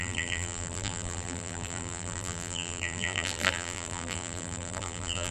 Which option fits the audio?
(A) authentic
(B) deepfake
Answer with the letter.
B